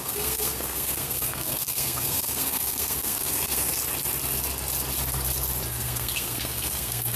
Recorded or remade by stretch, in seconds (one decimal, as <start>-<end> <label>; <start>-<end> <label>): 0.0-3.7 remade; 3.7-5.7 recorded; 5.7-7.2 remade